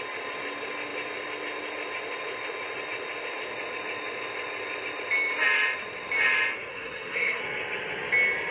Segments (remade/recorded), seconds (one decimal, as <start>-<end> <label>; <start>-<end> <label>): 0.0-6.7 recorded; 6.7-7.4 remade; 7.4-8.5 recorded